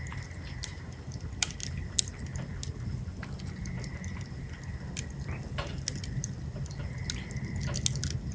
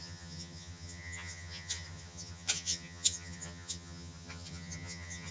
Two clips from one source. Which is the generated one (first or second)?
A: second